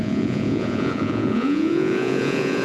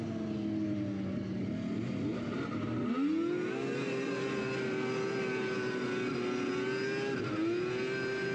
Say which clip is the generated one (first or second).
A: first